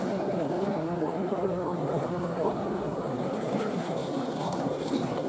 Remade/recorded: remade